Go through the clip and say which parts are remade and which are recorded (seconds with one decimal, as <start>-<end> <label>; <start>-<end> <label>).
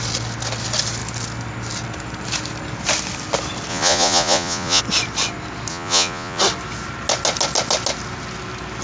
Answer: 0.0-3.7 recorded; 3.7-4.8 remade; 4.8-5.7 recorded; 5.7-6.4 remade; 6.4-8.8 recorded